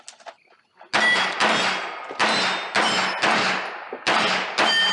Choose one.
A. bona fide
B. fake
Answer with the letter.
A